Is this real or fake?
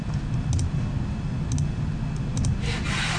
real